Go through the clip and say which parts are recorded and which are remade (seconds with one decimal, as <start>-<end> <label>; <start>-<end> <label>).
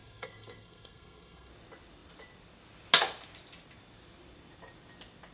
0.0-1.5 remade; 1.5-5.3 recorded